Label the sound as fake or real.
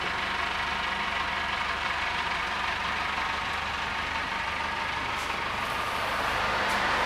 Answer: real